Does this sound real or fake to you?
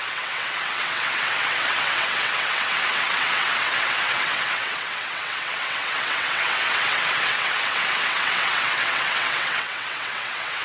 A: fake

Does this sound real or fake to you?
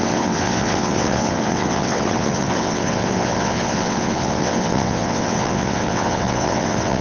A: fake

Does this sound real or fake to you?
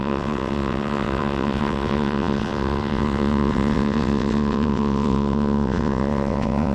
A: fake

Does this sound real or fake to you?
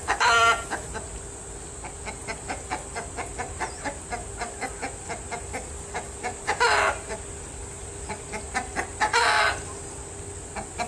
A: real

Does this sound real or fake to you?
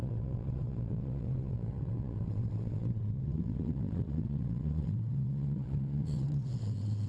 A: fake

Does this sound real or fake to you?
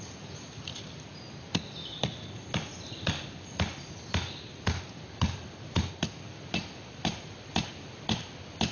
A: real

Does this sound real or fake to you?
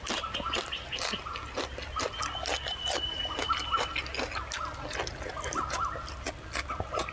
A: real